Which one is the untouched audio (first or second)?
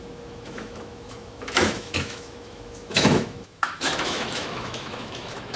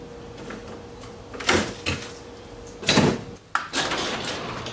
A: second